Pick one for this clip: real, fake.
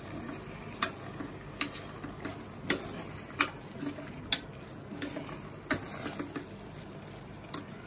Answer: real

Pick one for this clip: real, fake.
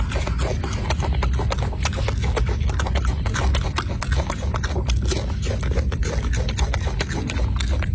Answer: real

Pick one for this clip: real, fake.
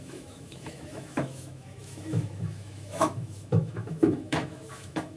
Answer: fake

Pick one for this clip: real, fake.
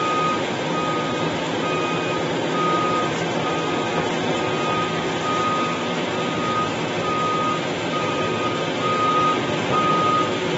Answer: real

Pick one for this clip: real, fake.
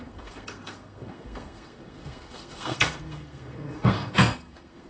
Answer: fake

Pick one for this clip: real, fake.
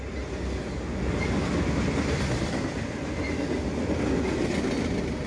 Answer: real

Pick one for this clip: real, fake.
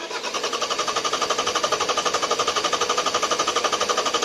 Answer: real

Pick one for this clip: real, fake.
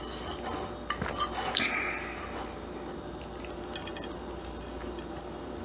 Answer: real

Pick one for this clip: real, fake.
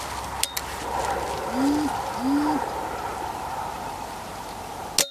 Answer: real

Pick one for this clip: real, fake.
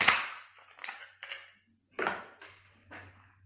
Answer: real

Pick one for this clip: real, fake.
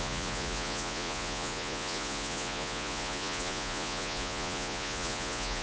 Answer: fake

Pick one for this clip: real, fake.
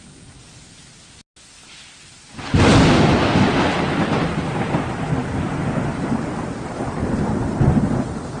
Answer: real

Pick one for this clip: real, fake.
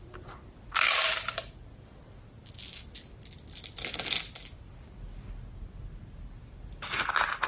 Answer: real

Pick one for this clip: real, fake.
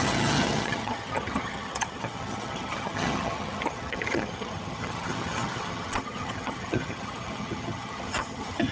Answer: fake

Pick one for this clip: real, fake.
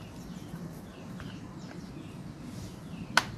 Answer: real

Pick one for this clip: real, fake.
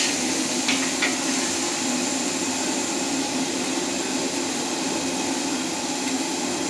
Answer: real